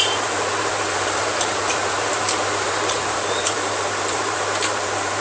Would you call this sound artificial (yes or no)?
yes